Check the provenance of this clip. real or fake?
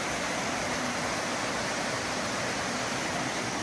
real